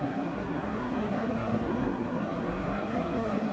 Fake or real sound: fake